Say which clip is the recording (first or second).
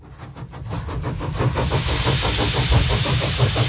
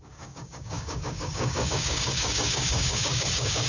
first